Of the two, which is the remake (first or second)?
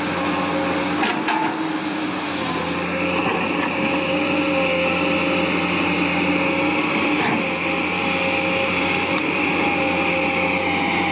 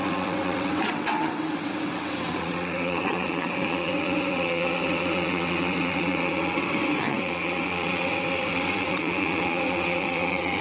second